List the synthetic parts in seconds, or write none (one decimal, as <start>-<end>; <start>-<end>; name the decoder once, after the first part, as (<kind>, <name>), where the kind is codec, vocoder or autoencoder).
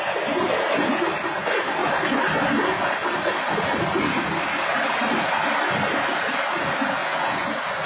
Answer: 7.0-7.9 (vocoder, Vocos)